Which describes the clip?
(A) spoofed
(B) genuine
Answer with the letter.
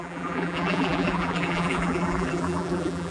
A